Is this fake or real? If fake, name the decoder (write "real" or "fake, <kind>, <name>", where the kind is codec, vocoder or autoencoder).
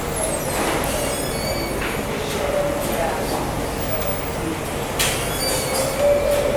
real